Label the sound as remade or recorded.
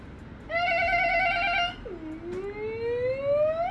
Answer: recorded